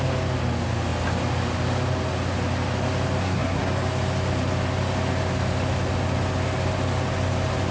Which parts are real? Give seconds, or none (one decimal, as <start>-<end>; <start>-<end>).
0.0-3.2; 3.7-7.7